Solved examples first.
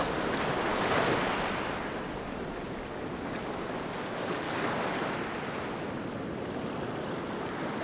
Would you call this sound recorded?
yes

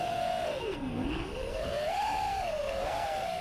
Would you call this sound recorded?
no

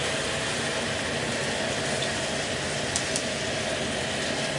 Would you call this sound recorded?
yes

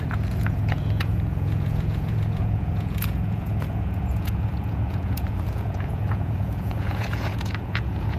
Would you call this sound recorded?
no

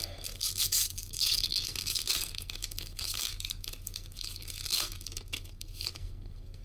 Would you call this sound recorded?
no